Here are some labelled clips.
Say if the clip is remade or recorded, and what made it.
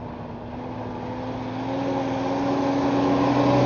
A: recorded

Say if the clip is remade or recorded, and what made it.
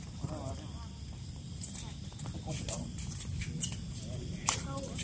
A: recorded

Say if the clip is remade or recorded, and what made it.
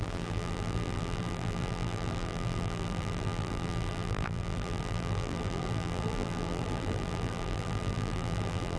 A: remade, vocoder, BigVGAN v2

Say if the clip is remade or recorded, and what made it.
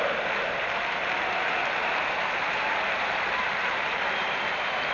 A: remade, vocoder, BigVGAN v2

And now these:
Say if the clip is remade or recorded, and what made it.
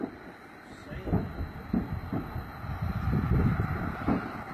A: recorded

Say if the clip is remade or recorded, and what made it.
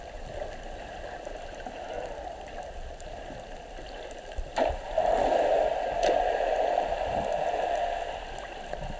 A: remade, vocoder, BigVGAN v2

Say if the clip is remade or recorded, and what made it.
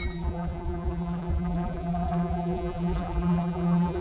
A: remade, vocoder, BigVGAN v2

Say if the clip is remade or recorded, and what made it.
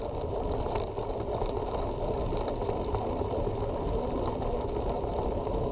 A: recorded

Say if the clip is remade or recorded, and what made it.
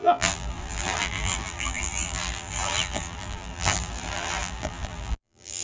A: remade, vocoder, BigVGAN v2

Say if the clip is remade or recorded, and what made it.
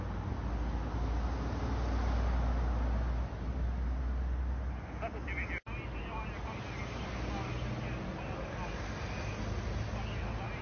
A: recorded